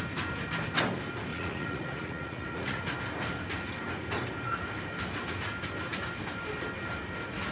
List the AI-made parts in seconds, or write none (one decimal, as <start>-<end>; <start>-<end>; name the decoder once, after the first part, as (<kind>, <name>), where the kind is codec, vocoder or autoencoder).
1.3-2.8 (vocoder, Vocos)